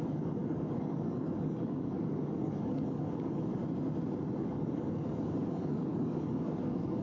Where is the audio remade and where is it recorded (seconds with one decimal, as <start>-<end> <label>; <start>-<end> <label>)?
0.0-3.6 remade; 3.6-4.4 recorded; 4.4-7.0 remade